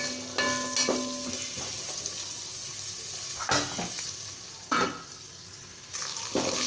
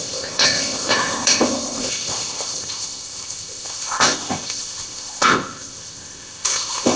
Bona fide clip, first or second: first